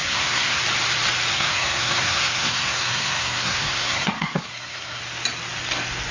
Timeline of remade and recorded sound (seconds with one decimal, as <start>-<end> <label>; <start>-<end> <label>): 0.0-0.6 remade; 0.6-1.3 recorded; 1.3-5.0 remade; 5.0-6.1 recorded